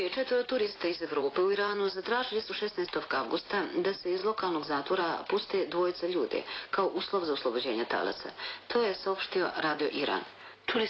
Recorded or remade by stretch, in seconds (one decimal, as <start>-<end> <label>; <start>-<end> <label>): 0.0-0.7 recorded; 0.7-2.5 remade; 2.5-9.0 recorded; 9.0-9.9 remade; 9.9-10.9 recorded